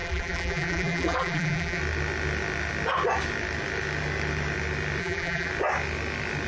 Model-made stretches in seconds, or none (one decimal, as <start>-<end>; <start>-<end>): 0.0-1.8; 5.0-5.5